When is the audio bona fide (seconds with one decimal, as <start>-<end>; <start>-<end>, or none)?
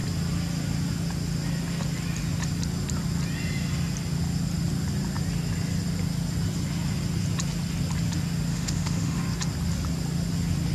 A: 0.0-8.5; 9.2-10.7